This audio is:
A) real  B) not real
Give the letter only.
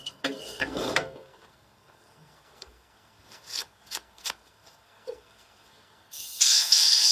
B